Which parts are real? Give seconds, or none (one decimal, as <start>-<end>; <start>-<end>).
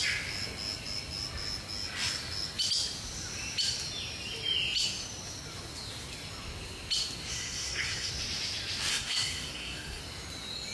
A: 0.0-7.3; 8.1-8.9; 10.0-10.7